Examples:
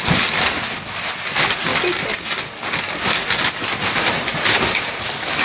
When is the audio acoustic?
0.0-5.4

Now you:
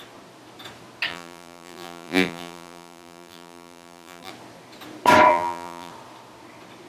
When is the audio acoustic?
0.0-1.1; 4.3-5.3; 5.9-6.9

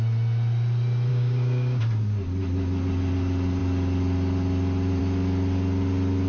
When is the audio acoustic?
0.0-1.1; 1.8-6.3

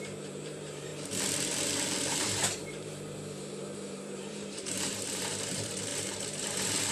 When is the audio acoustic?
0.9-2.1